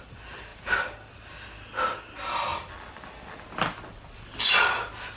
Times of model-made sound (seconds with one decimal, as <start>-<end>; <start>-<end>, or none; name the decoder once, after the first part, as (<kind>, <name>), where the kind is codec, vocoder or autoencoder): none